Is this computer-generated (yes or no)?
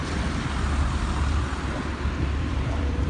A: yes